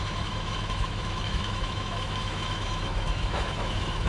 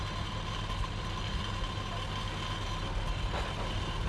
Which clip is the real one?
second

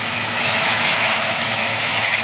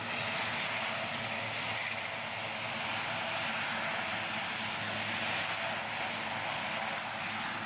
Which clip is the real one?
second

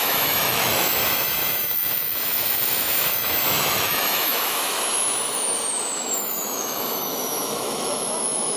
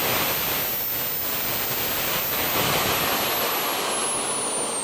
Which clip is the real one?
second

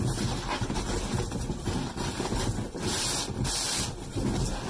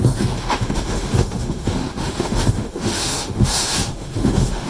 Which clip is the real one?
first